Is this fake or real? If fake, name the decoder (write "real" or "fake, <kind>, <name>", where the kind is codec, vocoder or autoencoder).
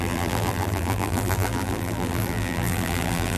fake, vocoder, BigVGAN v2